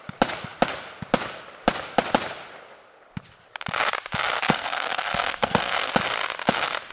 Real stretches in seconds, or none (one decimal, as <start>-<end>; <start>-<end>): 0.0-4.4; 5.9-6.9